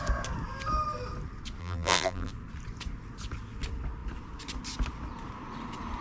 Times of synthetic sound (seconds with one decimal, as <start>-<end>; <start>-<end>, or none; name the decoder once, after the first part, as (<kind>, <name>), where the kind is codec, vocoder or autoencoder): 1.6-2.3 (vocoder, BigVGAN v2)